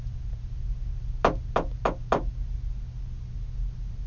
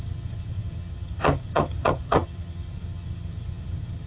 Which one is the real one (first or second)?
first